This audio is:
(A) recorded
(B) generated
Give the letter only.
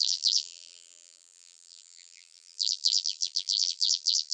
B